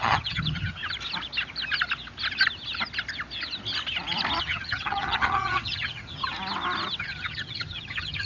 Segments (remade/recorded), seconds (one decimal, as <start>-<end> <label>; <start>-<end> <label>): 0.0-0.8 remade; 0.8-4.4 recorded; 4.4-6.2 remade; 6.2-7.0 recorded; 7.0-8.3 remade

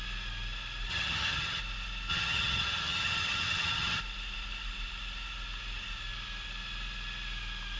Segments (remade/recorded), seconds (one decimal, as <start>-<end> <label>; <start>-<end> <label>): 0.0-0.9 recorded; 0.9-1.6 remade; 1.6-2.1 recorded; 2.1-4.0 remade; 4.0-7.8 recorded

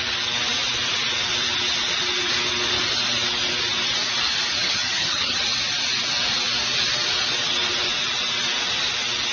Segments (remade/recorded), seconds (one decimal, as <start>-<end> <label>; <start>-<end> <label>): 0.0-4.6 recorded; 4.6-5.4 remade; 5.4-9.3 recorded

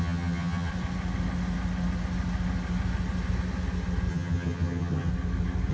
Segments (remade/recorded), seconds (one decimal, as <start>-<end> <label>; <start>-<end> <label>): 0.0-0.7 remade; 0.7-4.1 recorded; 4.1-5.1 remade; 5.1-5.7 recorded

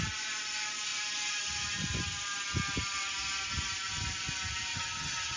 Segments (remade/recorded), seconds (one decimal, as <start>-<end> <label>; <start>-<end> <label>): 0.0-4.7 recorded; 4.7-5.4 remade